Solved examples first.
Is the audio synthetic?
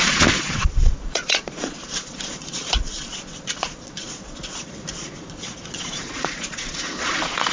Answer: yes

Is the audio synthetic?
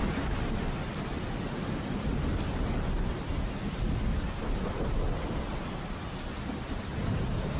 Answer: no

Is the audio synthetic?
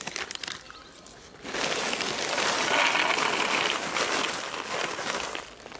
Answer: no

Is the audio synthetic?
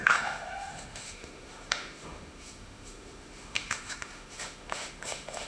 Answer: yes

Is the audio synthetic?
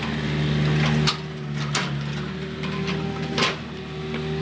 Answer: no